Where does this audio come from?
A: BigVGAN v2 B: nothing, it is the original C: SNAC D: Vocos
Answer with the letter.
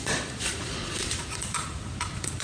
D